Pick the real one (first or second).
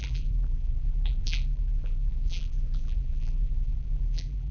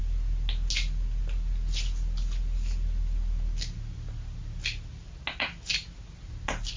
second